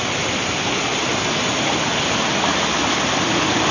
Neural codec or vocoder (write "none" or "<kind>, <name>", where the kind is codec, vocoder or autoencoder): none